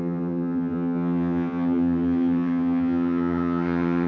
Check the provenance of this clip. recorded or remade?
remade